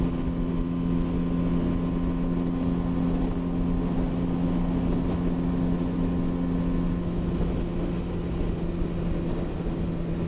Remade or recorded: recorded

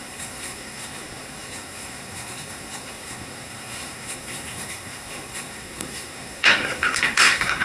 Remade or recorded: remade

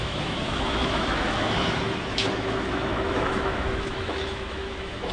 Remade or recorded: remade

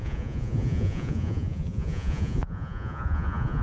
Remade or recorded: remade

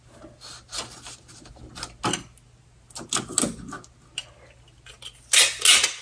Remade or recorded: recorded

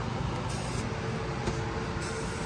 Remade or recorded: recorded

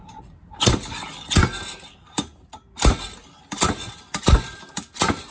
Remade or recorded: recorded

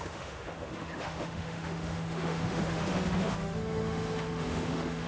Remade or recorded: remade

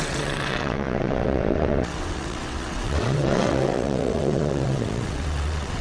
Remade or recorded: remade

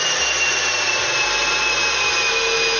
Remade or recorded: recorded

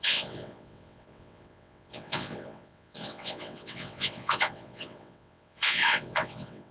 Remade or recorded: remade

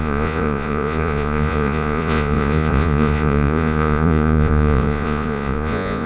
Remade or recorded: remade